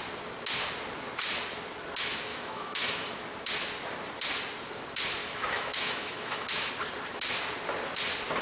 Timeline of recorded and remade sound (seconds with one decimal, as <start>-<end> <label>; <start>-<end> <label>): 0.0-2.3 recorded; 2.3-3.2 remade; 3.2-5.2 recorded; 5.2-6.7 remade; 6.7-8.4 recorded